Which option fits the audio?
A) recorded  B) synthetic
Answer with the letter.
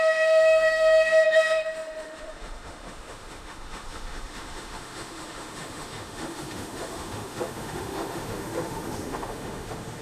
B